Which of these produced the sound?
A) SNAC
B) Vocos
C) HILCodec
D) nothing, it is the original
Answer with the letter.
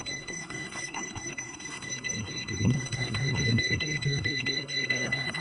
A